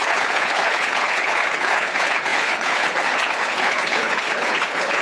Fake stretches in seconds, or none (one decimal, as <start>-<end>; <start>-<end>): 0.0-5.0